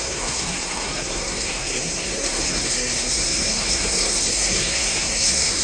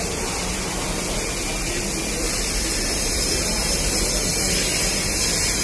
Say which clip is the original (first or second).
second